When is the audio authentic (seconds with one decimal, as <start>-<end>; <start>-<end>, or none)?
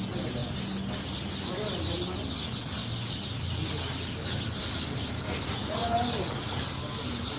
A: 0.0-7.4